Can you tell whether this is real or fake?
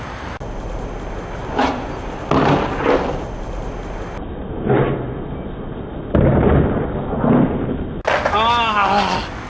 real